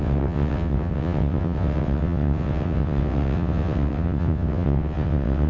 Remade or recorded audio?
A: remade